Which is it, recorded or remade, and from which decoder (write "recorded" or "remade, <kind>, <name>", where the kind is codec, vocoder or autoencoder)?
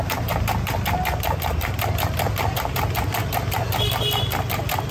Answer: recorded